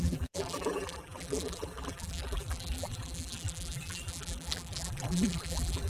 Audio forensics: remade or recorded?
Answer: remade